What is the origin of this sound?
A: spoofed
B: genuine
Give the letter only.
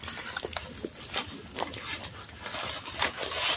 B